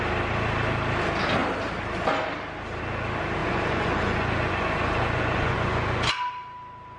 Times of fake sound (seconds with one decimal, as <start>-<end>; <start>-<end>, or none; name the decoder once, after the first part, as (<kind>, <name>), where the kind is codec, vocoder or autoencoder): 3.4-6.1 (vocoder, Vocos)